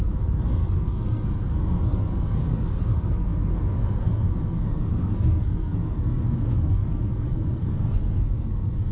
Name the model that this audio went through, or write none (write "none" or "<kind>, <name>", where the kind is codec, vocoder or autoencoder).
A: codec, SNAC